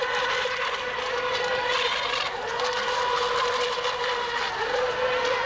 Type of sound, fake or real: real